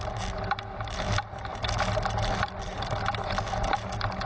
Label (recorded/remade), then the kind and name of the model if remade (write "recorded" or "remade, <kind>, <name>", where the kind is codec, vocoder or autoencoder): recorded